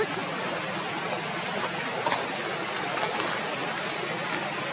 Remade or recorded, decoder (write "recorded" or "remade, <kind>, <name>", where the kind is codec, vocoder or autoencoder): recorded